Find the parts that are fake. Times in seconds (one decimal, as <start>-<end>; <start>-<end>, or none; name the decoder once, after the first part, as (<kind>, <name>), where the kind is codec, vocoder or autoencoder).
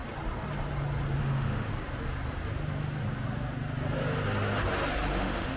1.2-1.7 (autoencoder, DAC-VAE); 5.1-5.6